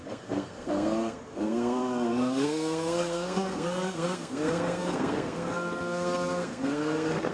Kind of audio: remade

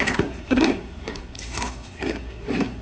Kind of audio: remade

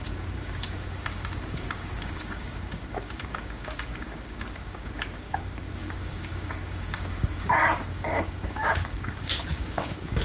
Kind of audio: remade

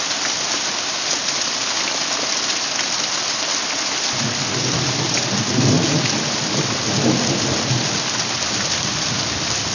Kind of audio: recorded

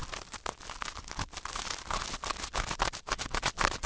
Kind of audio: recorded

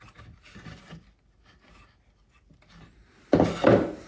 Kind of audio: recorded